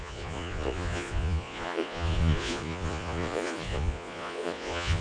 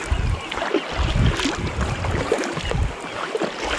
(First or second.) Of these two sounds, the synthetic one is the first